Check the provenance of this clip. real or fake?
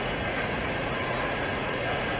fake